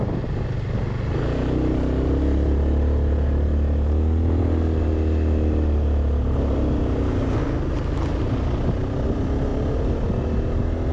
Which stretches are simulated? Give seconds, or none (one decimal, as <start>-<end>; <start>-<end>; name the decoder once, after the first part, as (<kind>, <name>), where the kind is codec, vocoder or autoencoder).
none